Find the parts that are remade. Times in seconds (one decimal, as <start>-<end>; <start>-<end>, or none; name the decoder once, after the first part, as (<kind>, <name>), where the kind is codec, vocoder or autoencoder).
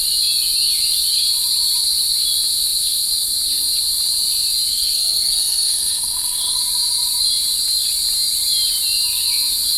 4.7-6.6 (codec, SNAC)